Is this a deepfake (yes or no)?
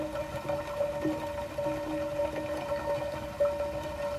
no